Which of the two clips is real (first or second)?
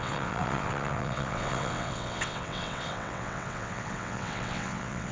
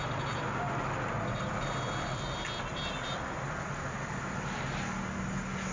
second